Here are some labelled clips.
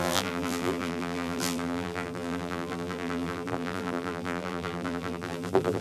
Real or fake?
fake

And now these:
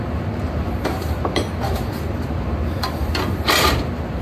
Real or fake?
fake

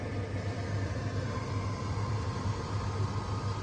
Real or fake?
real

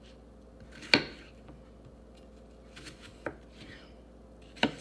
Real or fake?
real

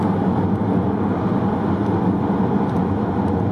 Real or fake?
real